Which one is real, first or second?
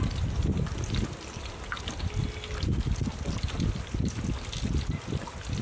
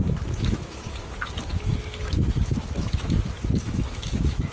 first